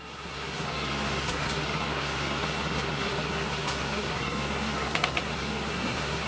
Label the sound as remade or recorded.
remade